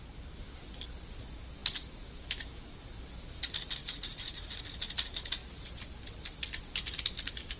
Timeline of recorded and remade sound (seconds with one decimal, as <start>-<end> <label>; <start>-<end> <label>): 0.0-3.8 recorded; 3.8-4.6 remade; 4.6-7.6 recorded